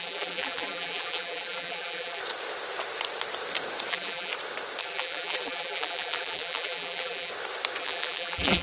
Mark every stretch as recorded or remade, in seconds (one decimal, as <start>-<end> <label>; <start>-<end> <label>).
0.0-2.2 remade; 2.2-3.9 recorded; 3.9-4.3 remade; 4.3-4.8 recorded; 4.8-7.3 remade; 7.3-7.8 recorded; 7.8-8.6 remade